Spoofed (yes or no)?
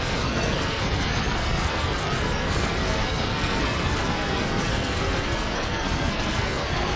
yes